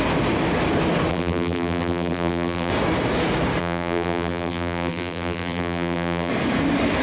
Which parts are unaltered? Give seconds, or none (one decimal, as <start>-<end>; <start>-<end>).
0.0-1.1; 2.7-3.6; 6.3-7.0